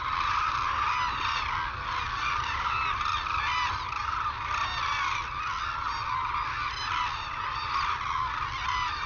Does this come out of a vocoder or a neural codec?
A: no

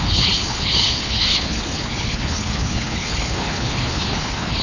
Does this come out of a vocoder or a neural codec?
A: yes